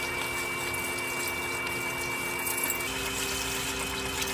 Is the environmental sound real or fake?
real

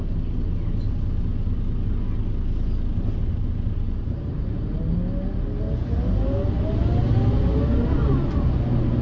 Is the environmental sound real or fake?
real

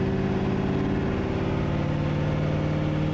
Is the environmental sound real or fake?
real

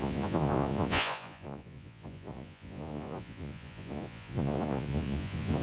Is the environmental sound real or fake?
fake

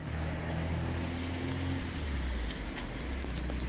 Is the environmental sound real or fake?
real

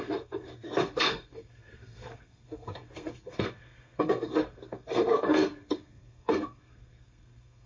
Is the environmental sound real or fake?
fake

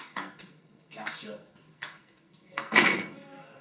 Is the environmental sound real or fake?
fake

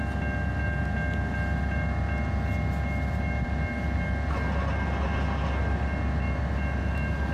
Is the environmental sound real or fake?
real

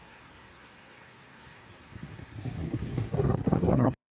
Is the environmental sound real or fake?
fake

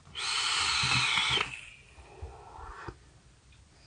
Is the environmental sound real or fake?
real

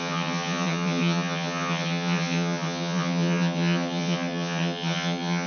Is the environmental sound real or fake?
fake